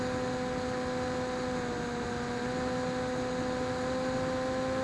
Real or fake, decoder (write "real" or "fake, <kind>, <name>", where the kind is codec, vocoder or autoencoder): real